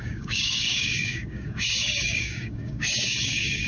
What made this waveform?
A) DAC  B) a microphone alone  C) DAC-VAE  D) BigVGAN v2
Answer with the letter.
A